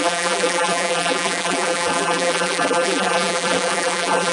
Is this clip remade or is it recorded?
remade